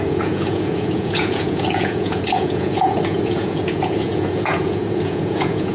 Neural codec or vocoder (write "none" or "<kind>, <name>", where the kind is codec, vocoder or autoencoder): vocoder, Vocos